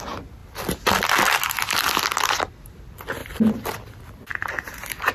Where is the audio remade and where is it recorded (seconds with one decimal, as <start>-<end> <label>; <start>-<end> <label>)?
0.0-5.1 recorded